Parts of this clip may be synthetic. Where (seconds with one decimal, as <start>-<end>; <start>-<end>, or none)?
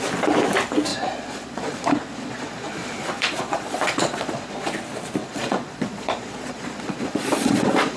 0.9-4.7; 5.2-8.0